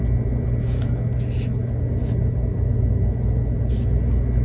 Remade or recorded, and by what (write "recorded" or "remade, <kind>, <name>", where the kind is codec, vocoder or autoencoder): recorded